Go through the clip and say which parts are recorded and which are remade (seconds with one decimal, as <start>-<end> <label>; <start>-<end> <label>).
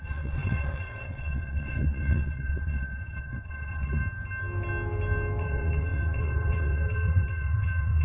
0.0-4.0 remade; 4.0-5.4 recorded; 5.4-8.0 remade